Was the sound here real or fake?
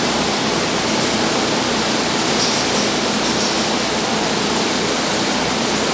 real